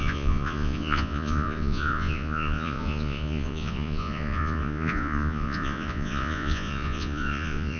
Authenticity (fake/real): fake